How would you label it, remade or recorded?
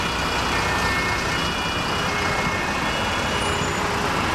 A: recorded